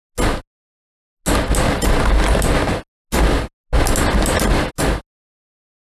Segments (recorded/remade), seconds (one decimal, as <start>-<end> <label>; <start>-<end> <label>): 0.0-5.9 recorded